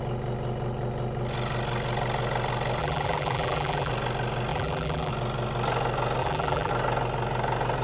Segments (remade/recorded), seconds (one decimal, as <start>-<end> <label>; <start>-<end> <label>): 0.0-2.8 recorded; 2.8-3.9 remade; 3.9-4.5 recorded; 4.5-5.1 remade; 5.1-6.2 recorded; 6.2-6.7 remade; 6.7-7.8 recorded